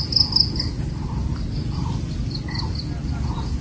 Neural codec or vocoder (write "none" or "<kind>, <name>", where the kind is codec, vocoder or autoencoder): none